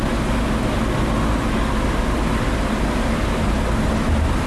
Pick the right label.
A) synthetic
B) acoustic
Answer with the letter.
B